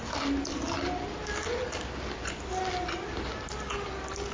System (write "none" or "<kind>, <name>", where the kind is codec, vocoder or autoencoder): none